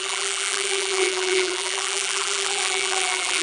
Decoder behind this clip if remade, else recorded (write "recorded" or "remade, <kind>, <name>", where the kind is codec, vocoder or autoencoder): remade, vocoder, BigVGAN v2